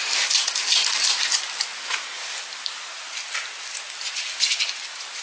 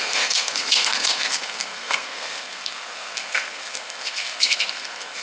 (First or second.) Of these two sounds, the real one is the first